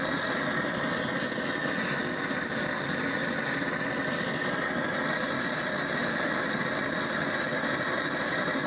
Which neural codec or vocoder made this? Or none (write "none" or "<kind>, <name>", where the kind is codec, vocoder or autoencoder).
none